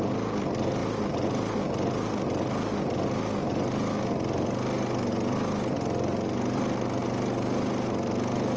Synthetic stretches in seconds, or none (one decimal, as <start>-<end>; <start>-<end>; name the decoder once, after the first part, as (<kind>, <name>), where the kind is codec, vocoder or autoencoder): none